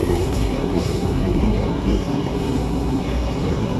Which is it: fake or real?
fake